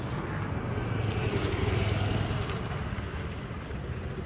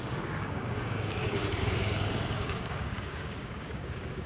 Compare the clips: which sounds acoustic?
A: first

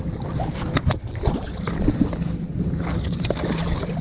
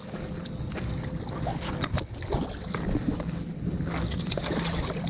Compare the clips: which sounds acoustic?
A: second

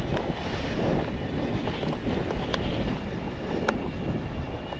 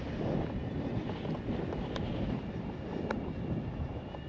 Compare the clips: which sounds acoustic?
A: first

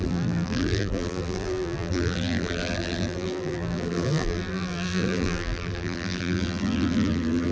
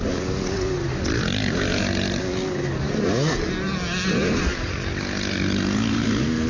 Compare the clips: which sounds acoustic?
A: second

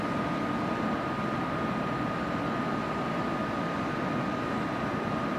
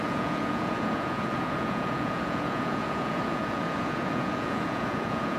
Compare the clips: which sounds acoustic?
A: first